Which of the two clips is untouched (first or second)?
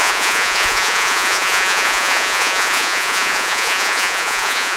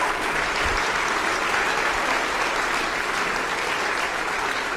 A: second